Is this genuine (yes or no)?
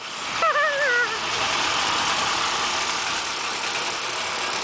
yes